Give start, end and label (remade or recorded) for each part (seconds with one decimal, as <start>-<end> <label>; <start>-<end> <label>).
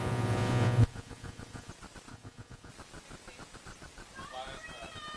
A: 0.0-1.7 remade; 1.7-2.1 recorded; 2.1-2.7 remade; 2.7-5.2 recorded